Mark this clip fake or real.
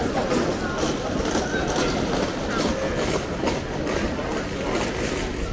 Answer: real